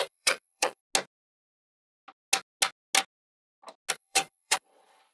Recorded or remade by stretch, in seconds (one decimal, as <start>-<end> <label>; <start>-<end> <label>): 0.0-0.8 remade; 0.8-3.9 recorded; 3.9-5.1 remade